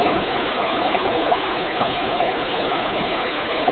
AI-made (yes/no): yes